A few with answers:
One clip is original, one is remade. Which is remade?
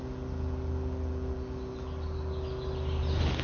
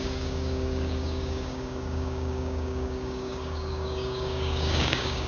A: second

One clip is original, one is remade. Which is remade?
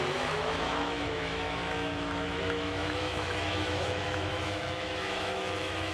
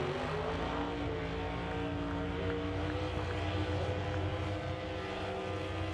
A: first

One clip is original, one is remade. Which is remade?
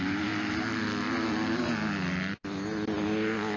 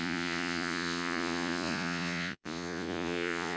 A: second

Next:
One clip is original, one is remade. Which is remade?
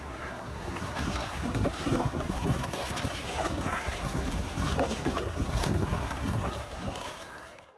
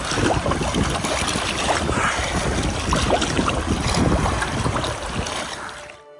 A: first